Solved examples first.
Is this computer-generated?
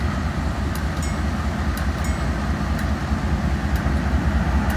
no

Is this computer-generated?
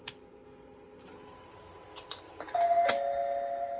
no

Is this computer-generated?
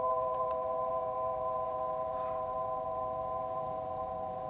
yes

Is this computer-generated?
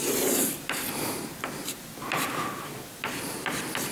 yes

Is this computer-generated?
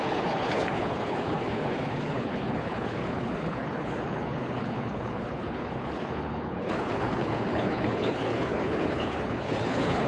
yes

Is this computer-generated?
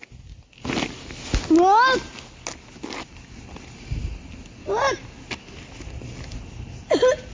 no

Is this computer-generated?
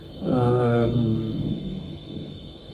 yes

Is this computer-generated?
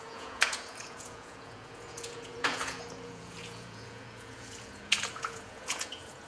yes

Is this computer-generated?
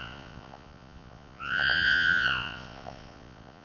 yes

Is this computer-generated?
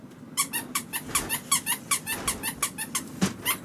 no